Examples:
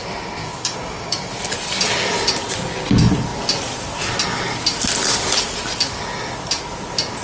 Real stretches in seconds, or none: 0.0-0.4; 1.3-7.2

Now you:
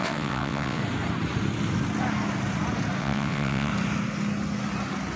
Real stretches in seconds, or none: 0.8-3.0; 3.7-5.2

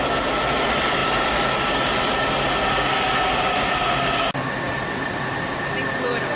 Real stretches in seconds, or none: 0.0-6.4